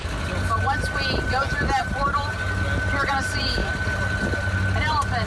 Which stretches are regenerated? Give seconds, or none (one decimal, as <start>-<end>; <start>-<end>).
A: 1.8-2.4